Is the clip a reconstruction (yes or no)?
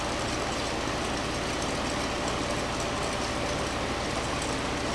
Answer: no